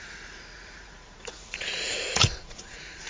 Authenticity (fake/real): fake